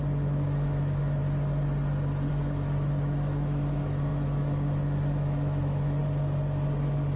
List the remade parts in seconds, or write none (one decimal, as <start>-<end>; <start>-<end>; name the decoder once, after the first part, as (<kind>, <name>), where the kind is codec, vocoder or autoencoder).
0.0-1.2 (autoencoder, DAC-VAE); 2.3-6.0